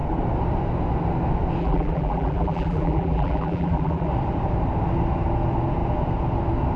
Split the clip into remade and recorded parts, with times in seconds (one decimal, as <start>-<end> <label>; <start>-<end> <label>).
0.0-1.6 recorded; 1.6-4.1 remade; 4.1-6.8 recorded

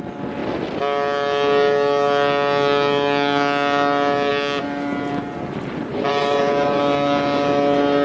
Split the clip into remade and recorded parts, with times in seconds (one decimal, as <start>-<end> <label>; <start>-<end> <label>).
0.0-5.9 recorded; 5.9-6.8 remade; 6.8-8.0 recorded

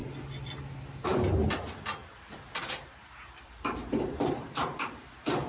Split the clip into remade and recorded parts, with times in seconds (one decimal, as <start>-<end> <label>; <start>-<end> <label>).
0.0-2.0 recorded; 2.0-5.5 remade

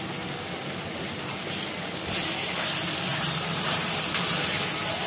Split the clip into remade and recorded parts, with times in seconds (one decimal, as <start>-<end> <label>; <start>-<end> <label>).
0.0-3.1 recorded; 3.1-4.0 remade; 4.0-5.1 recorded

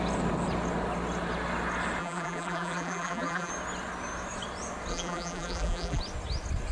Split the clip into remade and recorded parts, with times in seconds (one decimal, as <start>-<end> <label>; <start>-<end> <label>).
0.0-2.0 recorded; 2.0-3.5 remade; 3.5-4.9 recorded; 4.9-6.0 remade; 6.0-6.7 recorded